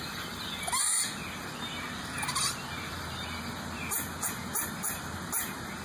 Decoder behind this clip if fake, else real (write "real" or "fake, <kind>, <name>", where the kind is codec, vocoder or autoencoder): real